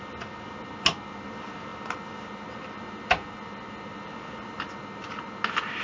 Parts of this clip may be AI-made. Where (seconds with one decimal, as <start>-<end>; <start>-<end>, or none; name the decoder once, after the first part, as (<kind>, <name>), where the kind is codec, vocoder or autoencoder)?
none